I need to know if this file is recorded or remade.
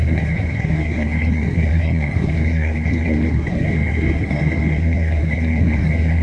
remade